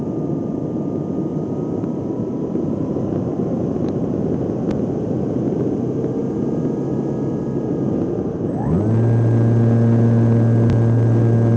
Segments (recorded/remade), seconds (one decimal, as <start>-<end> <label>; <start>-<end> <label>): 0.0-1.3 recorded; 1.3-4.2 remade; 4.2-11.6 recorded